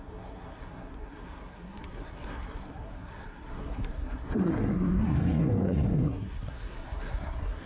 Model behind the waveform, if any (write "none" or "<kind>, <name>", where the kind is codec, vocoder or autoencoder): codec, SNAC